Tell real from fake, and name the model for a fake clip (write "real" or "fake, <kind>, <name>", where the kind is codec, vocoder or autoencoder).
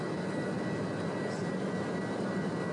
real